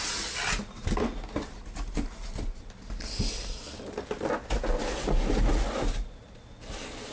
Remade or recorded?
recorded